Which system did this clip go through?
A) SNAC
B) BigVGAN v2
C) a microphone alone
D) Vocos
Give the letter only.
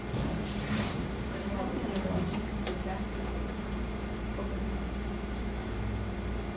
B